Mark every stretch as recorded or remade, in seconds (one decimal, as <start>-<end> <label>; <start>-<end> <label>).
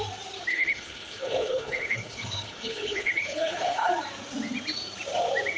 0.0-0.5 recorded; 0.5-3.9 remade; 3.9-5.6 recorded